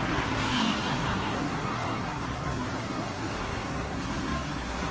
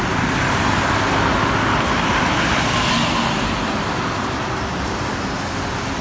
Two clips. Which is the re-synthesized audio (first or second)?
first